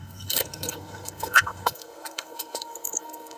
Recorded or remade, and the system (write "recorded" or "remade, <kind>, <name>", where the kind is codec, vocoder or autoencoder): remade, codec, SNAC